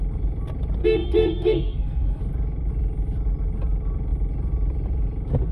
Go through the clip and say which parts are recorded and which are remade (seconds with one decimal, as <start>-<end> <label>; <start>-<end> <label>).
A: 0.0-0.8 recorded; 0.8-2.2 remade; 2.2-5.5 recorded